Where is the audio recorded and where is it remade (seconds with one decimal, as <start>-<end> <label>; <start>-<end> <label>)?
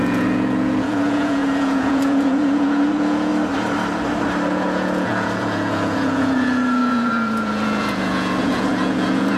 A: 0.0-3.3 remade; 3.3-4.5 recorded; 4.5-9.4 remade